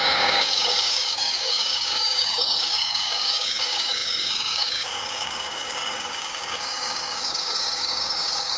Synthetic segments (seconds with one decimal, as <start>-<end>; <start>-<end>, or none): 0.0-8.6